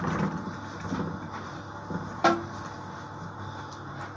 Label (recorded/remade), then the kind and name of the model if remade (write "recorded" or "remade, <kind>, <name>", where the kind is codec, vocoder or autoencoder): recorded